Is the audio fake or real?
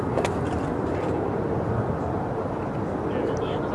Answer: real